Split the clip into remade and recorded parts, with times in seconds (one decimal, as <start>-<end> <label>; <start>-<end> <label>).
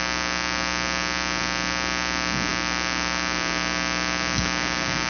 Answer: 0.0-5.1 recorded